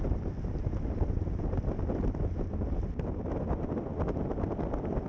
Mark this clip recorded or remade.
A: recorded